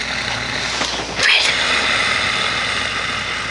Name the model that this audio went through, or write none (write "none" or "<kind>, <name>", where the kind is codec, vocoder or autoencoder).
none